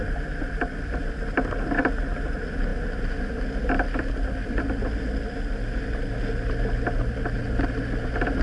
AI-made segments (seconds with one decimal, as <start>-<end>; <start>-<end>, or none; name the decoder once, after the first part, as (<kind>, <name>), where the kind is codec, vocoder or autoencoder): none